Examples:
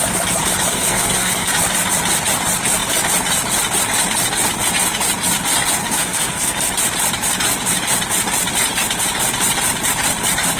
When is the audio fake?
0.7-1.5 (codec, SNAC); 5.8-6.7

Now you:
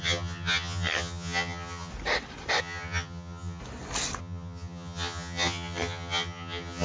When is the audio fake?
0.0-1.9 (vocoder, HiFi-GAN); 2.6-3.6; 4.2-6.8

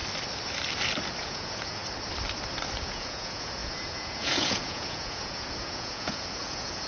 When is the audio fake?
1.2-1.8 (vocoder, Vocos); 2.8-6.9

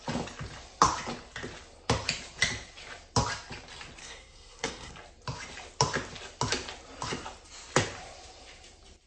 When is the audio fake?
4.0-4.9 (codec, SNAC)

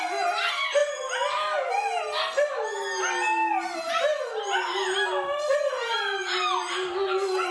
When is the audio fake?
none

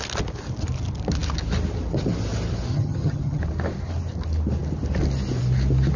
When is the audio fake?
2.7-3.4 (vocoder, HiFi-GAN)

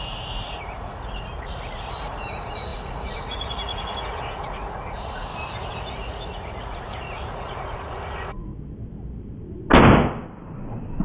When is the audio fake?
0.0-5.3 (vocoder, Vocos); 5.8-8.5